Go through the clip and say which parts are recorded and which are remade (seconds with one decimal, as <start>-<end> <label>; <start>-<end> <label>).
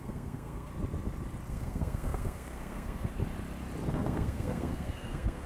0.0-0.7 remade; 0.7-1.5 recorded; 1.5-3.2 remade; 3.2-3.9 recorded; 3.9-5.5 remade